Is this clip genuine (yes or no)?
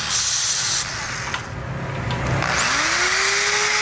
yes